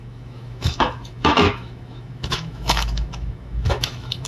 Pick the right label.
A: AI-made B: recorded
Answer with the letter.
A